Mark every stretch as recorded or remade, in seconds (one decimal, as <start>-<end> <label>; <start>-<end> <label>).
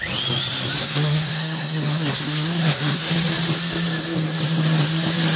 0.0-0.8 recorded; 0.8-3.1 remade; 3.1-5.4 recorded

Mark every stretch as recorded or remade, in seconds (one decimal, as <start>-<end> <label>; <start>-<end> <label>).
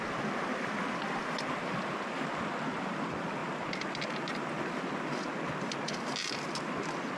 0.0-7.2 recorded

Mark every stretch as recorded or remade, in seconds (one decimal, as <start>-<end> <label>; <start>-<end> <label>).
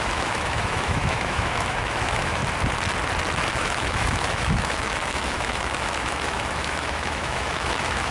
0.0-2.4 remade; 2.4-3.5 recorded; 3.5-8.1 remade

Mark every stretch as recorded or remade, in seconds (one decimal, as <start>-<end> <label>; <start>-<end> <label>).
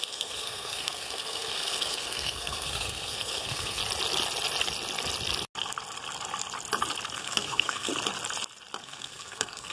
0.0-3.8 remade; 3.8-7.2 recorded; 7.2-7.9 remade; 7.9-8.8 recorded; 8.8-9.7 remade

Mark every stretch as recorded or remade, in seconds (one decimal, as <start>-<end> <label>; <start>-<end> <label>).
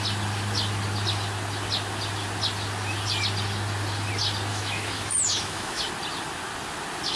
0.0-4.5 recorded; 4.5-5.9 remade; 5.9-7.2 recorded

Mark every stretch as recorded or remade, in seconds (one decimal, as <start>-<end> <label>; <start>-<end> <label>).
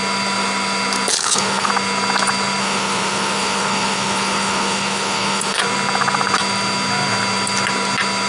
0.0-1.1 recorded; 1.1-1.7 remade; 1.7-2.6 recorded; 2.6-5.6 remade; 5.6-8.3 recorded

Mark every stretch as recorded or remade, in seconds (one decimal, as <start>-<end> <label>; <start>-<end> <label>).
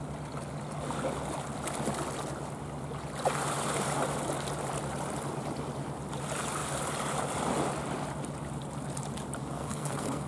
0.0-9.4 recorded; 9.4-10.3 remade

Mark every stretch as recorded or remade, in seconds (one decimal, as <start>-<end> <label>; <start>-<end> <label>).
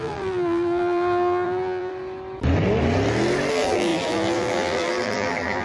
0.0-1.9 remade; 1.9-3.5 recorded; 3.5-5.6 remade